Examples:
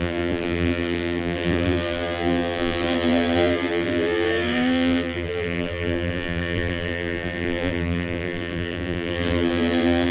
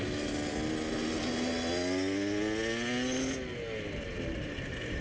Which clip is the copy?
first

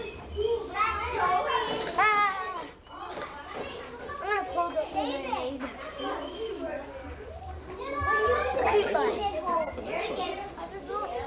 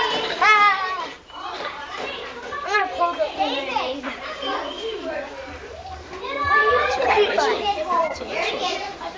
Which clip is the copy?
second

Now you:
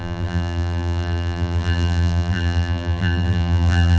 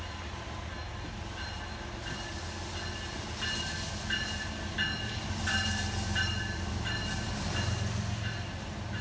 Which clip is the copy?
first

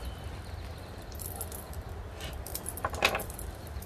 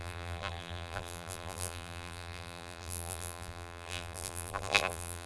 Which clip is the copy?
second